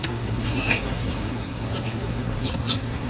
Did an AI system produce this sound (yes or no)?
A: yes